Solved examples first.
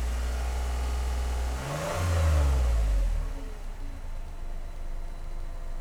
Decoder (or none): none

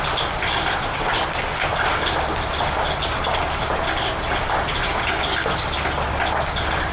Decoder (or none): none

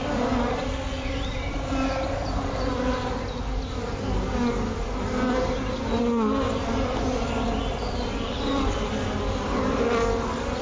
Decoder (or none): none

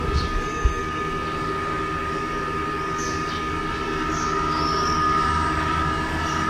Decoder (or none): codec, DAC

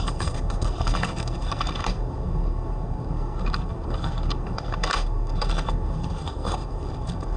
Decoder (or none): codec, SNAC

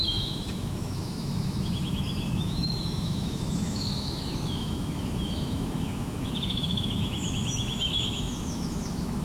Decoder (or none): autoencoder, DAC-VAE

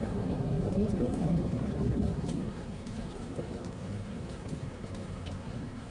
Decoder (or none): codec, SNAC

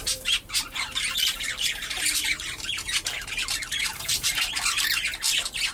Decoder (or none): vocoder, BigVGAN v2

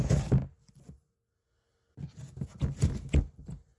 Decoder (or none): none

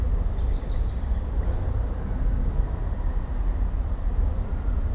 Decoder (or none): none